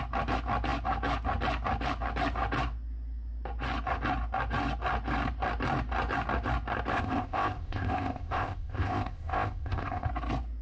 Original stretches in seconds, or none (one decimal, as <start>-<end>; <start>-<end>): 0.0-6.9; 10.1-10.6